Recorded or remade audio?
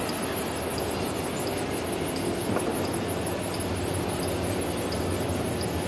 recorded